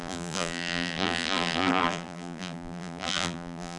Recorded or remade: remade